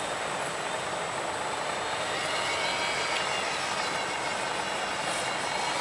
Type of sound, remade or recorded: recorded